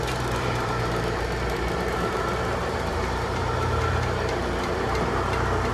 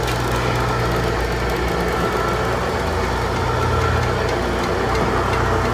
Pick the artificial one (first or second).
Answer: first